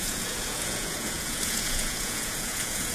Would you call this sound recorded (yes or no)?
no